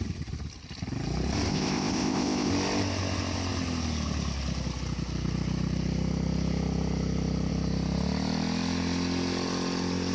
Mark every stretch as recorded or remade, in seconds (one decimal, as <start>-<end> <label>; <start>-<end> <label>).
0.0-1.5 recorded; 1.5-2.5 remade; 2.5-10.1 recorded